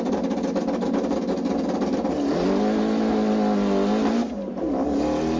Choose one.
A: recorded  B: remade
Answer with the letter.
A